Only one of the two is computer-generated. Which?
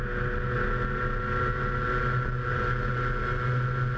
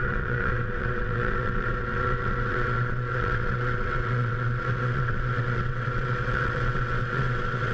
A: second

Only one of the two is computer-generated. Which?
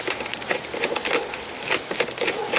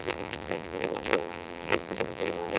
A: second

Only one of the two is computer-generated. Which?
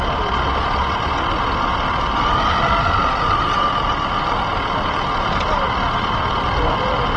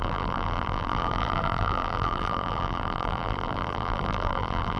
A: second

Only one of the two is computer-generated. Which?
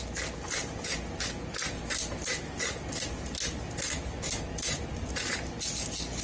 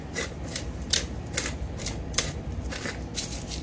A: second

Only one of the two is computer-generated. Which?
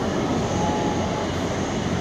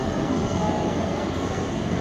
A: second